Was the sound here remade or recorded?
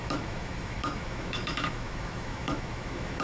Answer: remade